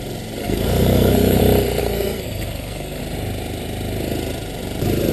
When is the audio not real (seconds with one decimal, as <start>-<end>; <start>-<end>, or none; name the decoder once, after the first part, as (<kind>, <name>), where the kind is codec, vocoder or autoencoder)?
0.4-1.4 (codec, SNAC); 1.8-3.0